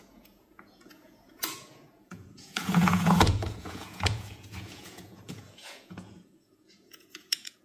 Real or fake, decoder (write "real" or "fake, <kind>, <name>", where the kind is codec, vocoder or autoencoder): fake, vocoder, Vocos